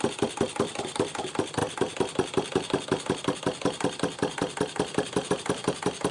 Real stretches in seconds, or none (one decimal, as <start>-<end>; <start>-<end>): 0.0-6.1